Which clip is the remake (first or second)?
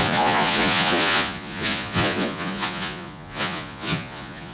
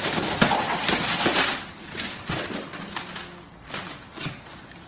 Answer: first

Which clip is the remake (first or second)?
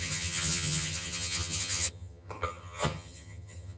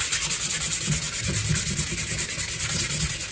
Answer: first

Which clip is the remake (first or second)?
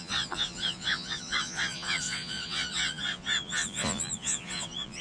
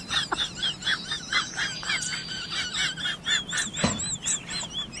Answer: first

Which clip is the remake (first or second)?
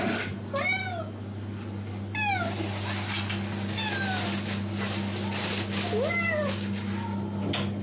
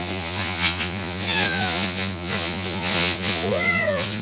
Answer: second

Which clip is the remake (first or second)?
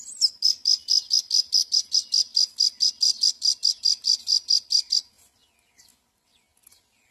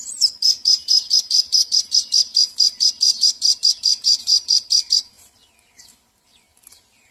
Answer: second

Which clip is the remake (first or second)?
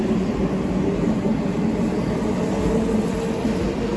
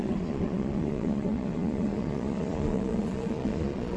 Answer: second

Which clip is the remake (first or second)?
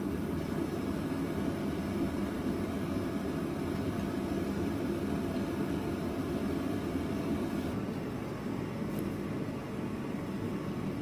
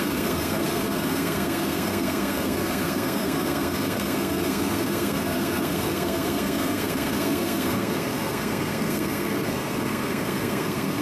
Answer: second